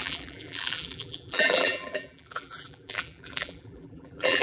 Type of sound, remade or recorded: remade